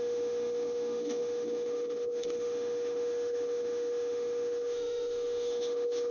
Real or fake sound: fake